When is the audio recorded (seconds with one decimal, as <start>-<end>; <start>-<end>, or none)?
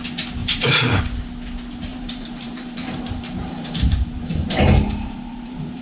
0.0-0.4; 1.0-1.9